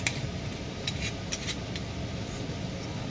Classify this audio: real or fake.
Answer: real